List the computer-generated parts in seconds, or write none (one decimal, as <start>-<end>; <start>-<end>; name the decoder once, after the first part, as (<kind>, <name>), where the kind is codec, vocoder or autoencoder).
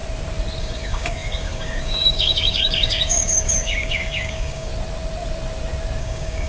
0.6-4.7 (codec, DAC); 6.0-6.5